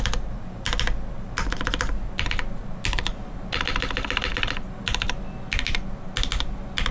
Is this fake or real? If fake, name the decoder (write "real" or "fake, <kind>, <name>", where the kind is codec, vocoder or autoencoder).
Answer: real